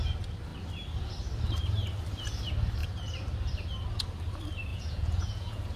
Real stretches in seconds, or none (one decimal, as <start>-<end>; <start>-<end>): 0.0-4.7